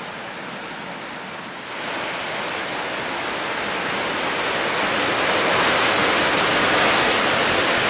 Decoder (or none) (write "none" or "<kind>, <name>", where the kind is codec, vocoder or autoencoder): none